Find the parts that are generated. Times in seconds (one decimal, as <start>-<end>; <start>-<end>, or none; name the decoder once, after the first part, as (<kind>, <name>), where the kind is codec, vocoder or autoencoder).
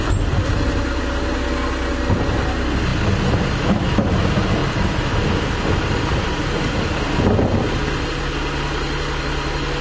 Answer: 2.9-3.6 (vocoder, BigVGAN v2); 4.6-6.7